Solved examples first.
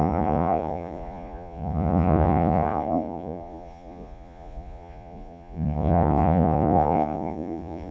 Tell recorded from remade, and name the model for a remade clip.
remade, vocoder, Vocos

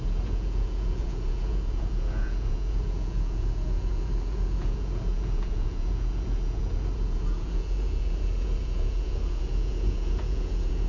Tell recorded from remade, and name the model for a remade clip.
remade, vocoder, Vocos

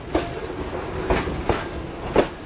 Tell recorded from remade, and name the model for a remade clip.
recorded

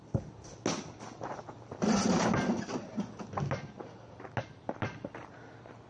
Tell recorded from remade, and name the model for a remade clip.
recorded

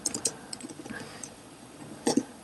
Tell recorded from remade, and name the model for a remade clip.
remade, vocoder, Vocos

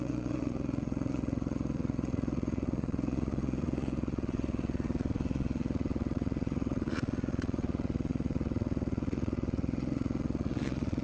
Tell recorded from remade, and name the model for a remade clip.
remade, vocoder, Vocos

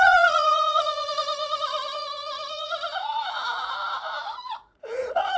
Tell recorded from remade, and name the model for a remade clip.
remade, vocoder, Vocos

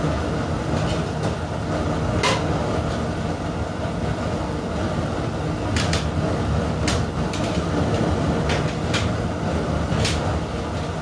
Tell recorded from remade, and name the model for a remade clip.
recorded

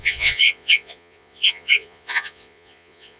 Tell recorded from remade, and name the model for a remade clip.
remade, vocoder, Vocos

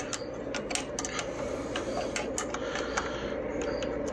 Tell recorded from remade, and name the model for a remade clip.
recorded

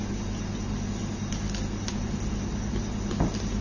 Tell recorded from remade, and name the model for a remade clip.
recorded